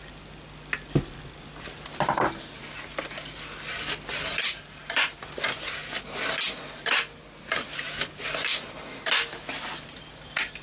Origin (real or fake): real